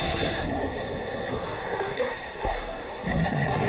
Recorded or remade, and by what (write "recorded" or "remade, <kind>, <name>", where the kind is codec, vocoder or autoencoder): remade, codec, SNAC